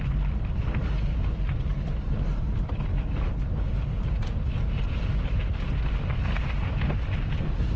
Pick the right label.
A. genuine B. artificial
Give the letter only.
A